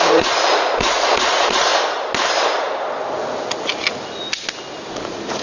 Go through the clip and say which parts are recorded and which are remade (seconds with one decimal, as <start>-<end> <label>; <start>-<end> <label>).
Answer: 0.0-1.7 remade; 1.7-4.9 recorded; 4.9-5.4 remade